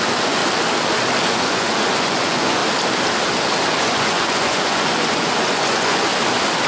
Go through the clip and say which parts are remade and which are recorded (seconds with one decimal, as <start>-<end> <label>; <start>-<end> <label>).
0.0-0.4 remade; 0.4-1.2 recorded; 1.2-2.6 remade; 2.6-3.8 recorded; 3.8-6.1 remade; 6.1-6.7 recorded